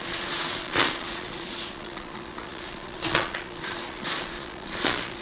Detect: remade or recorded remade